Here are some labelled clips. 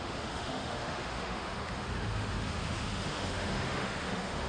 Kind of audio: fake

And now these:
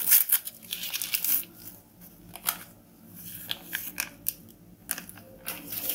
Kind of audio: real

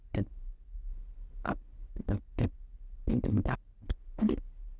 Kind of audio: real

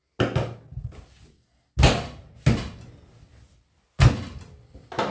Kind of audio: real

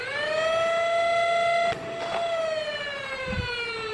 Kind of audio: real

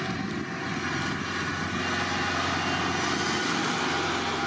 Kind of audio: real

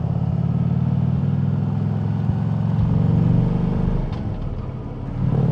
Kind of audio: real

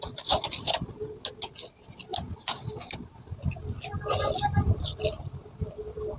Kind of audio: real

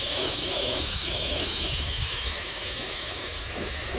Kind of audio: fake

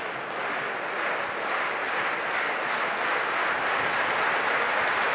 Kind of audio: real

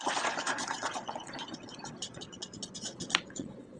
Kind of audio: fake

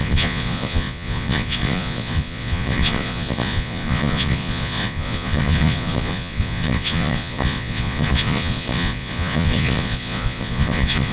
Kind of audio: fake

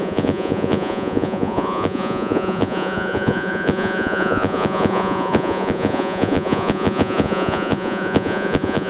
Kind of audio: fake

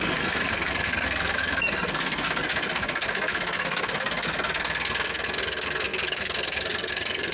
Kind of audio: fake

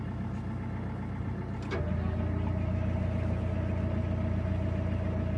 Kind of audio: real